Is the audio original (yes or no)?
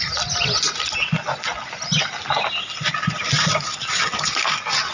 yes